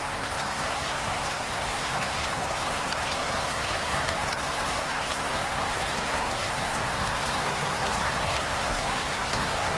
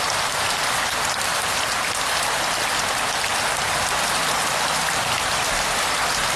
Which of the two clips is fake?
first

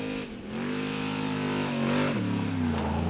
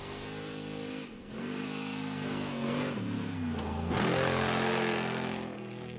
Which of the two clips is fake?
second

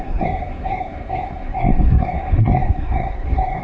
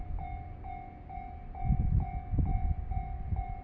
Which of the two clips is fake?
first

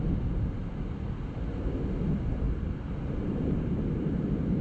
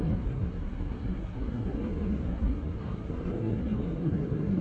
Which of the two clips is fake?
second